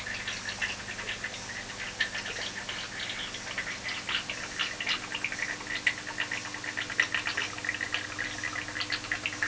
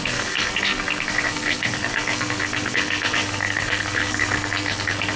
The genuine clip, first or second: first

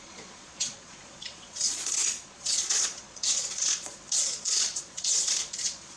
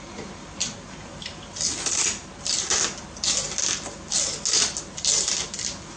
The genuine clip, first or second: second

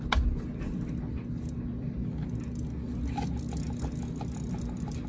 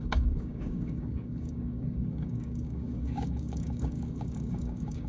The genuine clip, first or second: first